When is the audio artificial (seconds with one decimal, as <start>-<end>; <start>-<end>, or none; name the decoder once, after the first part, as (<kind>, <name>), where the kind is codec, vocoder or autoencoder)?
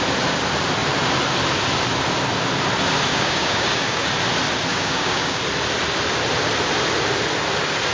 3.1-4.1 (codec, DAC); 4.7-5.4